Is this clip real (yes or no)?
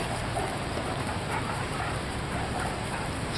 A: no